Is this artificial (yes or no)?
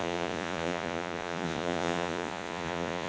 yes